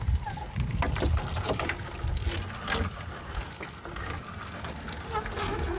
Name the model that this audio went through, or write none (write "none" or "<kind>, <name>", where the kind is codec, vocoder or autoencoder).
none